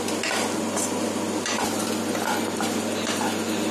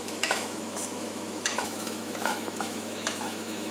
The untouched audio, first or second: first